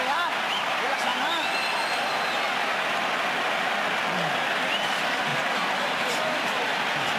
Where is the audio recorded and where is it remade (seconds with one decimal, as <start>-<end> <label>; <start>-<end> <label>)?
0.0-1.1 remade; 1.1-4.0 recorded; 4.0-5.3 remade; 5.3-5.8 recorded; 5.8-7.2 remade